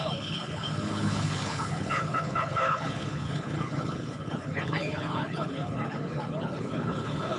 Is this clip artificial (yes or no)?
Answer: yes